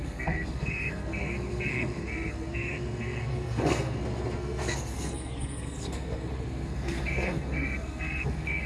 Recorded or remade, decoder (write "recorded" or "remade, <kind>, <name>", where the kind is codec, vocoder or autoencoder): remade, codec, SNAC